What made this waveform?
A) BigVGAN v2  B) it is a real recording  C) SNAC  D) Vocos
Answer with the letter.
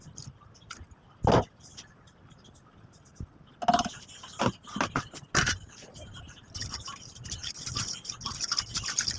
B